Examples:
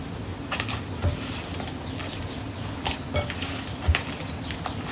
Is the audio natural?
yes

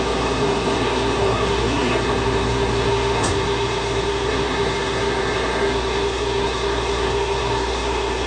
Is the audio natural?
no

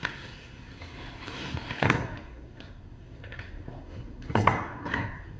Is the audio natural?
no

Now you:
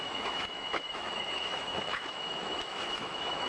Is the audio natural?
no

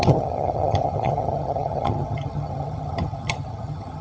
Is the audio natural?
no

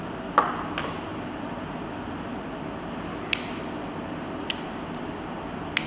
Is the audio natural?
yes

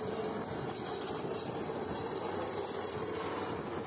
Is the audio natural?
no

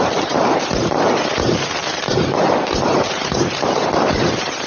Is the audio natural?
no